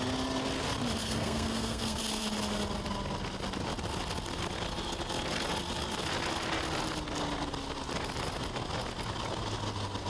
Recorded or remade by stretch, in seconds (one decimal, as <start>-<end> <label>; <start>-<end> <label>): 0.0-1.0 recorded; 1.0-2.0 remade; 2.0-10.1 recorded